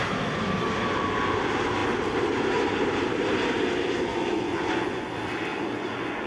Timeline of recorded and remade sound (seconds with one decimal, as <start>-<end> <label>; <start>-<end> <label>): 0.0-4.1 recorded; 4.1-5.1 remade; 5.1-5.5 recorded; 5.5-6.3 remade